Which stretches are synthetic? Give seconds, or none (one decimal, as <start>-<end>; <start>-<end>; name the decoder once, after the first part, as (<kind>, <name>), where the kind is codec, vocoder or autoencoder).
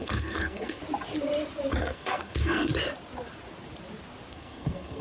0.0-0.8 (codec, SNAC); 1.8-2.7; 4.3-5.0